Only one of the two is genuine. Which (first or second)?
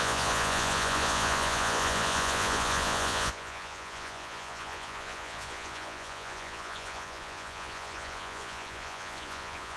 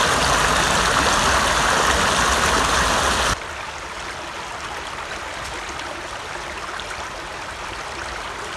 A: second